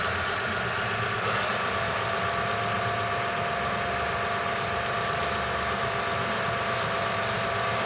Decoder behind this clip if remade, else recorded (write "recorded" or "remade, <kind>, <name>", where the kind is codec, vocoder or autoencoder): recorded